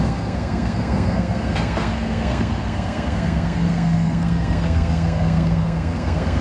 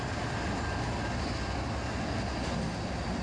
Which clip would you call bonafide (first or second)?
second